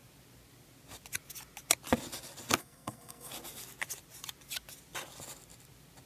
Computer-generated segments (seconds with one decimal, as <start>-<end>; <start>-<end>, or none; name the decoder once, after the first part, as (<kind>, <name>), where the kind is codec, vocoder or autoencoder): 2.6-3.3 (codec, SNAC)